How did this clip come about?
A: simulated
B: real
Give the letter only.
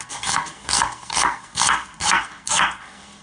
A